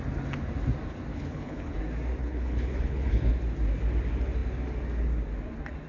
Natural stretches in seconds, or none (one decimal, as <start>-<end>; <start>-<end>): 0.0-1.1; 1.8-2.2; 3.3-5.9